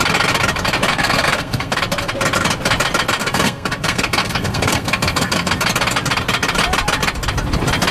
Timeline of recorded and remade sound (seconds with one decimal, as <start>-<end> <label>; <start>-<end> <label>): 0.0-0.9 recorded; 0.9-1.8 remade; 1.8-3.2 recorded; 3.2-5.5 remade; 5.5-7.9 recorded